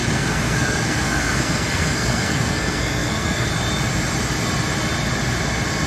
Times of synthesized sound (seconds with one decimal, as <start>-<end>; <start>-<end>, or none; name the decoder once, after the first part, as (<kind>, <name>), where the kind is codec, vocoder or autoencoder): 0.0-3.5 (codec, SNAC)